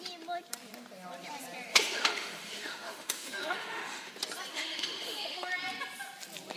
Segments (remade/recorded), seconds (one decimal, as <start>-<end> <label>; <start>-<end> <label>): 0.0-1.7 recorded; 1.7-4.1 remade; 4.1-4.5 recorded; 4.5-5.5 remade; 5.5-6.6 recorded